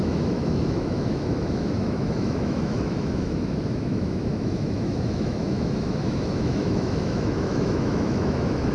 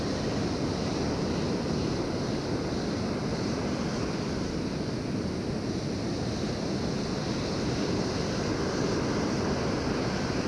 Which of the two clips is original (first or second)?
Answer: second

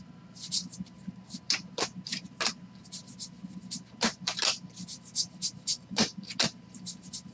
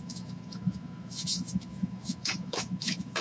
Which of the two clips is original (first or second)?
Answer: first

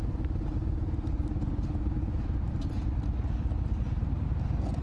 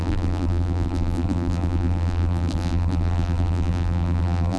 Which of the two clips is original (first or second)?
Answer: first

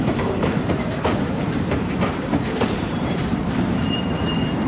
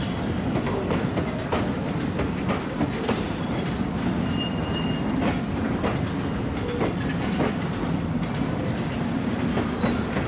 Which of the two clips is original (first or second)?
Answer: second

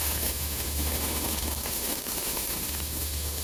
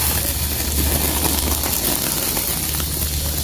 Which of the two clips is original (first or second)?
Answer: second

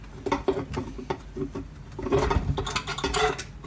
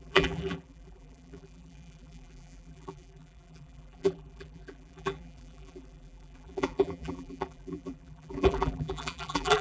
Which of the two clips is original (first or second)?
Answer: first